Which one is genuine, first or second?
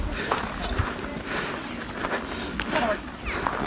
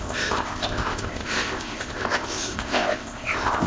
first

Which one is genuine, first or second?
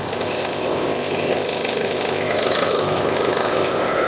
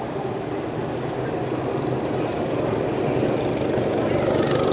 second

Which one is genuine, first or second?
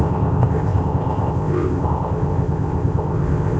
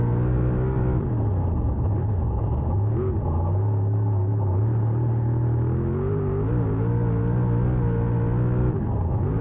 second